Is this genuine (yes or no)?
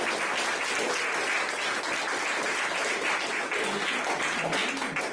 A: yes